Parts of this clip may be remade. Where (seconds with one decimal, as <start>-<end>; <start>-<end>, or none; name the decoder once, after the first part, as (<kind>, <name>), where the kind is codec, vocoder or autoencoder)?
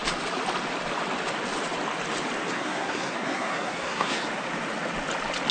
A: 2.5-4.2 (codec, SNAC)